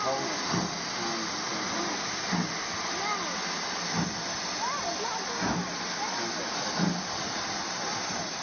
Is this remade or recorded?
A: recorded